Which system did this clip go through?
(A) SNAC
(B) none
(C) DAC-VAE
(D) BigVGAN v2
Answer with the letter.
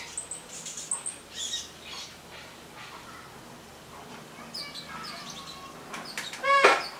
B